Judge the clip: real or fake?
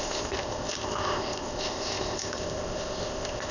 fake